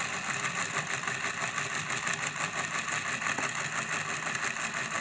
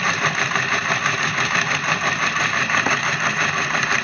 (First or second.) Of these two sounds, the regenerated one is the second